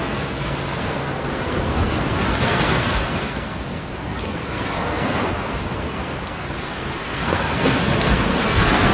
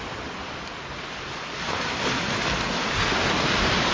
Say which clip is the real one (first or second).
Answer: second